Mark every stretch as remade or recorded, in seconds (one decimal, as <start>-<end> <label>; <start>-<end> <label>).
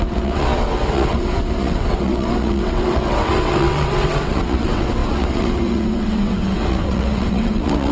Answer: 0.0-7.9 remade